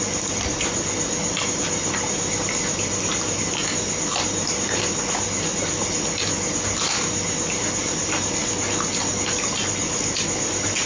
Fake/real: real